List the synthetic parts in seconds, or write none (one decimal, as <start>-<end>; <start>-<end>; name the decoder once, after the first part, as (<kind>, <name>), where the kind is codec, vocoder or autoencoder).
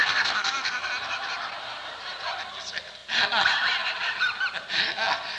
0.0-0.9 (codec, SNAC)